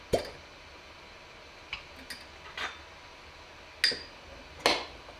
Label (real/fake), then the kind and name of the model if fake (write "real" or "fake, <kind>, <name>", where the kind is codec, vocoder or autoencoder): real